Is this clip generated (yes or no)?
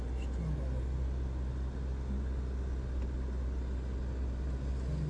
no